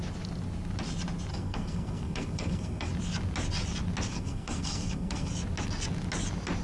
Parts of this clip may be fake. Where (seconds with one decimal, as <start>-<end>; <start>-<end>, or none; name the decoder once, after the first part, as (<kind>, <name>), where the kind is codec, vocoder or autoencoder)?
1.3-2.9 (codec, SNAC); 4.1-5.3